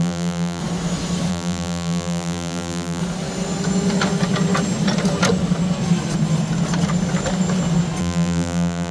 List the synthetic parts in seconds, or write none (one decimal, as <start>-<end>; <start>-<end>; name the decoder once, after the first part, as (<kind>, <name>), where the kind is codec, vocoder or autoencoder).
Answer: 0.0-0.6 (vocoder, BigVGAN v2); 1.3-3.0; 8.0-8.9